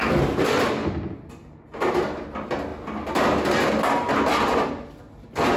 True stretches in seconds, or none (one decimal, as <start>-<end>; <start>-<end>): 0.7-5.6